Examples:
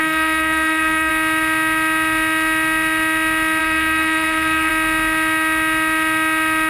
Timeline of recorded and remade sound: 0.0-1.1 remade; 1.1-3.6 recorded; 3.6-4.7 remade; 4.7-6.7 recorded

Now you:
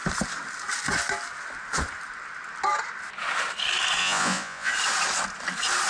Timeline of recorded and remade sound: 0.0-4.0 recorded; 4.0-4.7 remade; 4.7-5.9 recorded

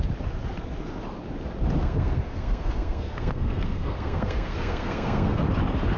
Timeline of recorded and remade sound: 0.0-1.8 recorded; 1.8-5.4 remade; 5.4-6.0 recorded

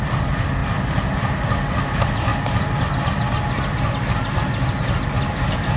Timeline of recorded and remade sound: 0.0-5.8 recorded

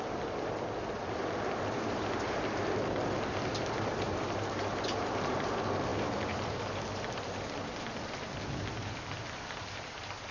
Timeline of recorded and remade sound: 0.0-10.3 recorded

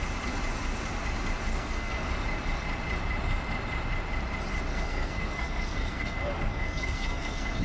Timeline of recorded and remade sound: 0.0-1.5 recorded; 1.5-2.1 remade; 2.1-4.7 recorded; 4.7-7.6 remade

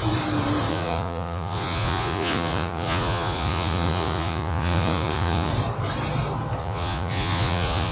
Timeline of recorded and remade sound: 0.0-0.7 recorded; 0.7-5.5 remade; 5.5-6.6 recorded; 6.6-7.9 remade

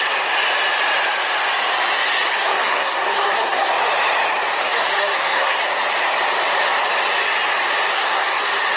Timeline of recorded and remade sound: 0.0-2.3 recorded; 2.3-3.7 remade; 3.7-4.6 recorded; 4.6-5.6 remade; 5.6-7.9 recorded; 7.9-8.4 remade; 8.4-8.8 recorded